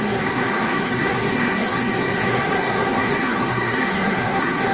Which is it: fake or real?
fake